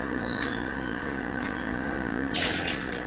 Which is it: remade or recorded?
remade